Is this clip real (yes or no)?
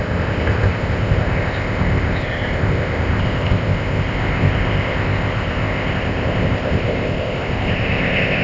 no